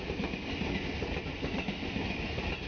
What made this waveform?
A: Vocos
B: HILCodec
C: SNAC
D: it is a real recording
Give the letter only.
D